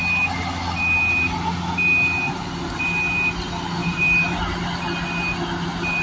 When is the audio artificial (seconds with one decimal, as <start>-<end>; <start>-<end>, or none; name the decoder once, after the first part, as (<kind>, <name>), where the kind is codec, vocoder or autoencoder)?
3.8-4.4 (vocoder, BigVGAN v2)